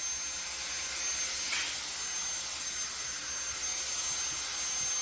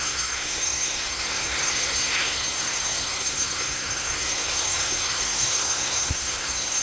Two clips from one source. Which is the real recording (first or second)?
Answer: first